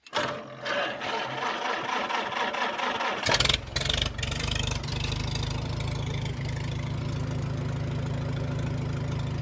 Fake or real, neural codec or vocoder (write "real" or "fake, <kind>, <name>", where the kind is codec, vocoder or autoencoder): real